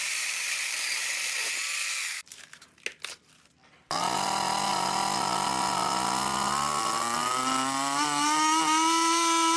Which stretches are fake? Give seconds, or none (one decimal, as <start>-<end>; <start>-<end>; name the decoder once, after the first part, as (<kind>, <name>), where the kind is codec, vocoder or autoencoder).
0.0-1.5 (vocoder, BigVGAN v2); 4.7-5.5